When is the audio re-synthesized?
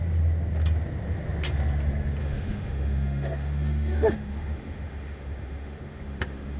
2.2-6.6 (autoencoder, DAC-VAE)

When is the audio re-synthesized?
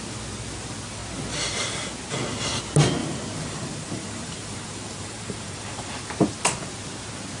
3.0-6.0 (vocoder, BigVGAN v2)